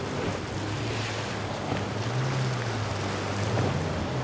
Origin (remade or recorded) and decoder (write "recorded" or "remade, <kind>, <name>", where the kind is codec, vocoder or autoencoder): recorded